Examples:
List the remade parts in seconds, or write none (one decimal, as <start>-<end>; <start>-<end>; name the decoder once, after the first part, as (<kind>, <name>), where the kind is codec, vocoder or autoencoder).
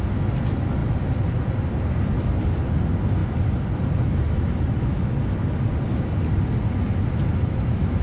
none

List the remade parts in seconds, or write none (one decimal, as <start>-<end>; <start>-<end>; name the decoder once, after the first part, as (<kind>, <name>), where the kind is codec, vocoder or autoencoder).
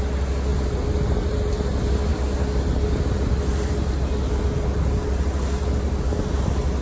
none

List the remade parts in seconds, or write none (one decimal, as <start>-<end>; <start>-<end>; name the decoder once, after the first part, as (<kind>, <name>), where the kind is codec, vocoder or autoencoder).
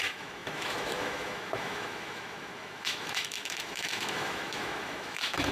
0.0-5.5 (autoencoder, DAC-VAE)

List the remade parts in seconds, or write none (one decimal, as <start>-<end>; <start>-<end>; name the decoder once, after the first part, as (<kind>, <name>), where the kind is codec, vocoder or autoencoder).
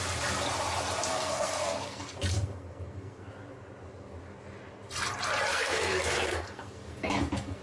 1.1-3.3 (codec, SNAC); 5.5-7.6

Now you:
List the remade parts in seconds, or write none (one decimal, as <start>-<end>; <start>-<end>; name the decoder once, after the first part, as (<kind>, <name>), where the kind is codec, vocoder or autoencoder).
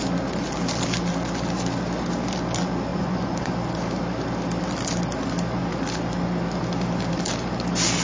2.9-3.5 (vocoder, Vocos)